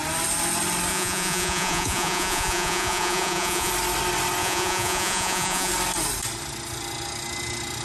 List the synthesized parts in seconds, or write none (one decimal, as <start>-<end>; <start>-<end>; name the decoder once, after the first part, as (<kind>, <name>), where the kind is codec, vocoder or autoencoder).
0.9-3.7 (vocoder, Vocos); 4.4-5.7